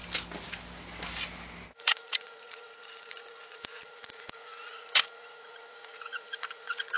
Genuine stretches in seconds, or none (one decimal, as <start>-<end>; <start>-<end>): 0.0-1.8

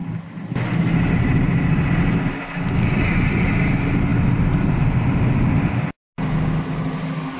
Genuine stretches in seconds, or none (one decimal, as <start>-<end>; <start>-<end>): 0.0-7.4

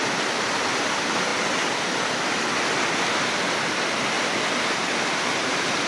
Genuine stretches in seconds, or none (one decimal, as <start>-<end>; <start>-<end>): 0.0-5.9

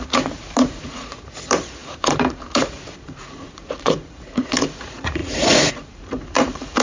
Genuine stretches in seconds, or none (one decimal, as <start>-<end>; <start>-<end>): none

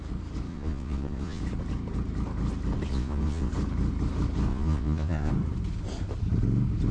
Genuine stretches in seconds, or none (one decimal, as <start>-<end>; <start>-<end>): 0.0-0.5; 1.4-2.9; 3.5-4.5; 5.3-6.9

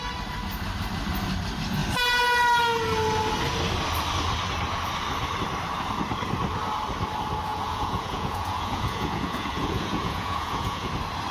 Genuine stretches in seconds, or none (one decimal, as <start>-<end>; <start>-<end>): 0.0-7.5; 10.9-11.3

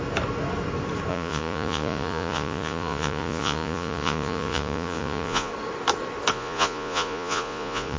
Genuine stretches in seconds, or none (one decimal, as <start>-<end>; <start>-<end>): 0.0-1.1; 5.5-6.3